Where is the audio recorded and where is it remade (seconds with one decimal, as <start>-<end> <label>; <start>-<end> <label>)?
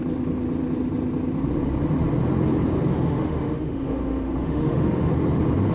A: 0.0-2.9 recorded; 2.9-5.1 remade; 5.1-5.7 recorded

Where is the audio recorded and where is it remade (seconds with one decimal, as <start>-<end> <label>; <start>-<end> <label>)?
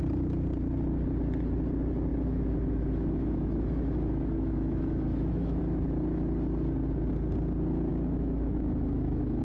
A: 0.0-2.1 recorded; 2.1-5.6 remade; 5.6-7.9 recorded; 7.9-9.4 remade